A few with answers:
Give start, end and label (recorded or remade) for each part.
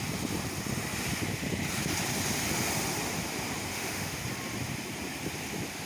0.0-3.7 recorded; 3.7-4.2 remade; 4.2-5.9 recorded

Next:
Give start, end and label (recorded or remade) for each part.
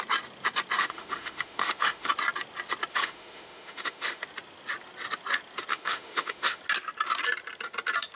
0.0-0.8 recorded; 0.8-2.1 remade; 2.1-2.9 recorded; 2.9-4.2 remade; 4.2-5.7 recorded; 5.7-6.6 remade; 6.6-8.2 recorded